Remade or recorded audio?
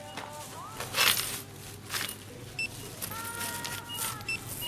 recorded